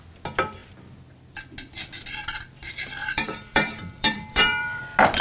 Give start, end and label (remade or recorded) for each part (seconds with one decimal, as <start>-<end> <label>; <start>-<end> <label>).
0.0-3.0 recorded; 3.0-4.8 remade; 4.8-5.2 recorded